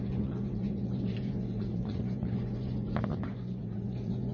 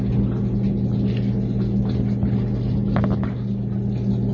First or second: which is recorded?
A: second